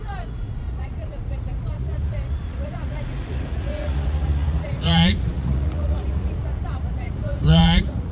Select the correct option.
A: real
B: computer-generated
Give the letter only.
B